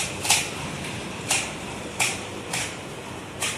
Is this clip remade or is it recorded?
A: remade